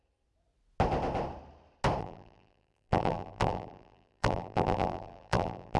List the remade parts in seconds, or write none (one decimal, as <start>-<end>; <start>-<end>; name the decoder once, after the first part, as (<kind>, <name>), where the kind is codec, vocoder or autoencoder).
2.0-5.8 (vocoder, BigVGAN v2)